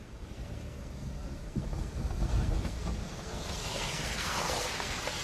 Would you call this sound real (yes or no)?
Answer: no